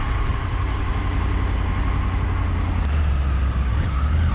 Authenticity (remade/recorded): recorded